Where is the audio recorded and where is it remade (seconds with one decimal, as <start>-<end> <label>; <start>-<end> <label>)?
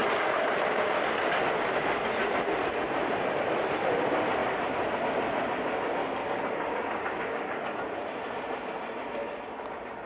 0.0-6.0 recorded; 6.0-7.8 remade; 7.8-10.1 recorded